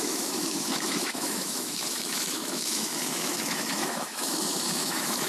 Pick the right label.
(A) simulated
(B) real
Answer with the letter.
A